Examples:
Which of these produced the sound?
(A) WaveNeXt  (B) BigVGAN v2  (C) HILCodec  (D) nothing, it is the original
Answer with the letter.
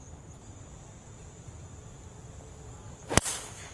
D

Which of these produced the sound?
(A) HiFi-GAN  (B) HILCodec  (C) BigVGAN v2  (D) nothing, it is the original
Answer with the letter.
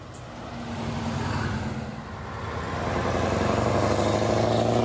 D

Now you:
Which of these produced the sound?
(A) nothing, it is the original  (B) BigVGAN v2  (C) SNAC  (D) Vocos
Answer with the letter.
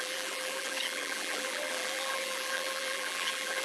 B